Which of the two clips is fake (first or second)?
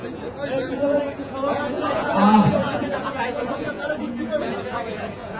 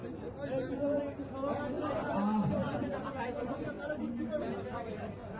first